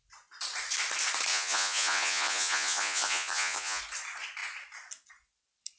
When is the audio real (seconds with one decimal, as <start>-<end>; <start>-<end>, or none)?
0.0-1.3; 3.8-5.8